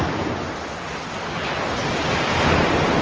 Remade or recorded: recorded